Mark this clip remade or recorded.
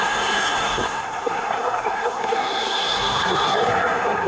remade